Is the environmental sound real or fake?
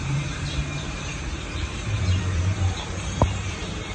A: fake